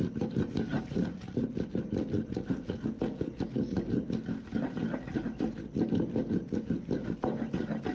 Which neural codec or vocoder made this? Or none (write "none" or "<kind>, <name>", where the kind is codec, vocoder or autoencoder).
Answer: none